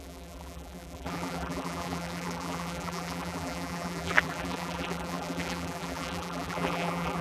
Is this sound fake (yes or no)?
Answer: yes